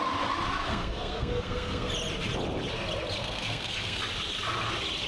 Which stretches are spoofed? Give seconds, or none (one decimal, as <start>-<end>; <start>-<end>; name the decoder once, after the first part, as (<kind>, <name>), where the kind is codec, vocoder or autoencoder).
0.7-1.9 (codec, SNAC); 3.2-4.0